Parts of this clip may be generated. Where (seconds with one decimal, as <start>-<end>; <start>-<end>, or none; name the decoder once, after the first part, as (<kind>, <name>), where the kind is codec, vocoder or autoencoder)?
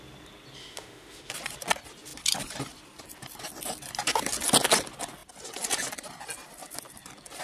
0.6-1.3 (autoencoder, DAC-VAE)